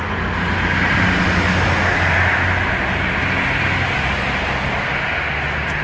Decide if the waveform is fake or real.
real